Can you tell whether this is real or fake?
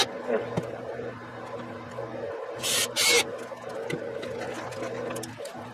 real